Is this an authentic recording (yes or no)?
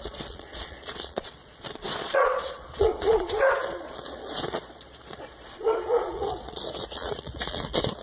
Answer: no